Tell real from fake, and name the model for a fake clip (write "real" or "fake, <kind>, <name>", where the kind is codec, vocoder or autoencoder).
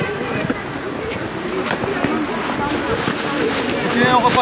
real